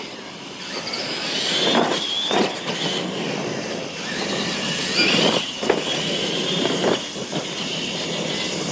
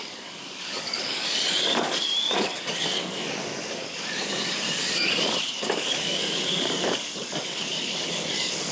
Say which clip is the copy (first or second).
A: second